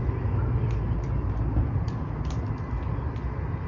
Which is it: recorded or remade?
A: recorded